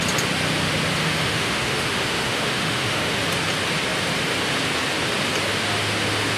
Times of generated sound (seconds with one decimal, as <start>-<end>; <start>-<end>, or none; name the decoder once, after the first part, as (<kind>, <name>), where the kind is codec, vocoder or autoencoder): 1.0-3.2 (autoencoder, DAC-VAE)